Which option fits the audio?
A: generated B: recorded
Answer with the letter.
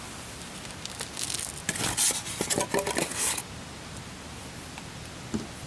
B